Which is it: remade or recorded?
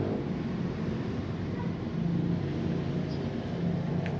recorded